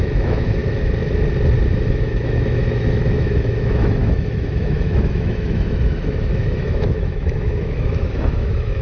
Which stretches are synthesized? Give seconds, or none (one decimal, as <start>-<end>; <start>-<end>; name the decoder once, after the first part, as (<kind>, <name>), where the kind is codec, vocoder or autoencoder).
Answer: 0.0-0.6 (autoencoder, DAC-VAE); 1.7-8.8